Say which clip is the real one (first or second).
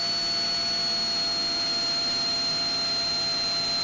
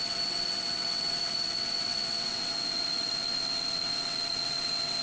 first